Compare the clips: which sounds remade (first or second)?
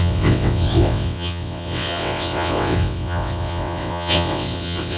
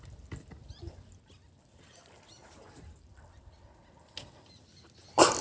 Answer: first